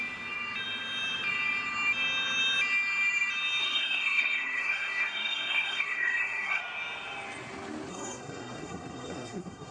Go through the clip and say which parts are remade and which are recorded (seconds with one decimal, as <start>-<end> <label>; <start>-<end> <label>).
0.0-3.6 recorded; 3.6-6.6 remade; 6.6-7.9 recorded; 7.9-9.7 remade